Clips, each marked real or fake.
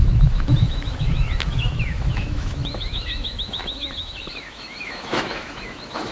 fake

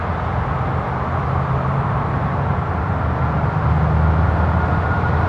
real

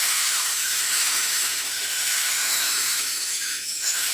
fake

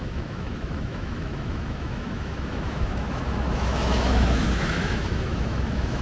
fake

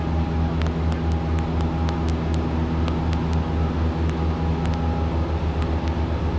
real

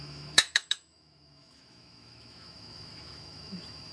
fake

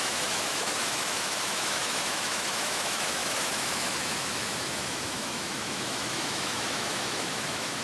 fake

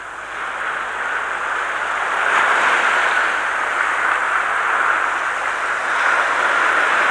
real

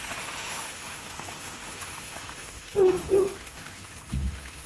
fake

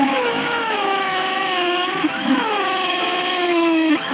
fake